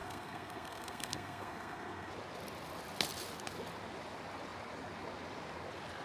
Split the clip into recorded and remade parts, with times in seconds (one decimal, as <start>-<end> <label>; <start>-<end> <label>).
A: 0.0-2.1 remade; 2.1-6.0 recorded